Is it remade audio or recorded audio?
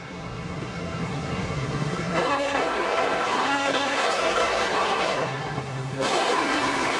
remade